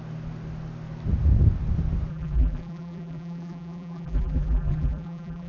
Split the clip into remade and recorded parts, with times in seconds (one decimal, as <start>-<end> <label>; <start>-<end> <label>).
0.0-2.1 recorded; 2.1-5.5 remade